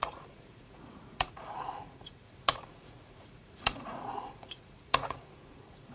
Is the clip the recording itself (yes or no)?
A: no